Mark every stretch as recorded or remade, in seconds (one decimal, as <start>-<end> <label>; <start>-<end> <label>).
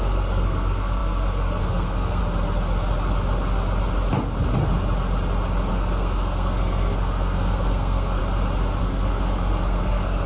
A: 0.0-2.2 remade; 2.2-5.7 recorded; 5.7-8.2 remade; 8.2-8.8 recorded; 8.8-10.3 remade